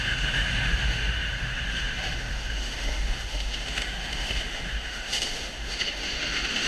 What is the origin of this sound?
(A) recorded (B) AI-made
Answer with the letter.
B